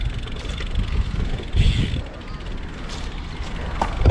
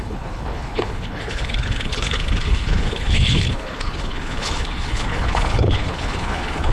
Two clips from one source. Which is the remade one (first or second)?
second